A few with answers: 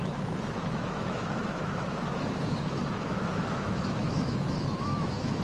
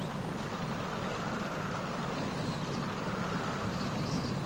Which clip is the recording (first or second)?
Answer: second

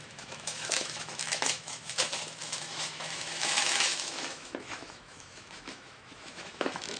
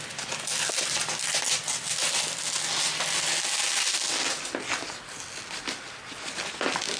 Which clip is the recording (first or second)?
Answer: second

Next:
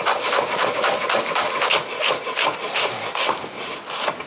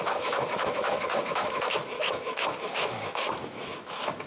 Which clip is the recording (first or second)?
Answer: first